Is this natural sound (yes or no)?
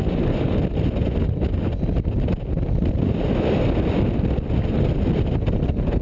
yes